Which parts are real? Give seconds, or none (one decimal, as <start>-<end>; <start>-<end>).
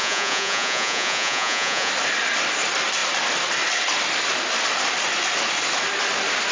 1.9-6.5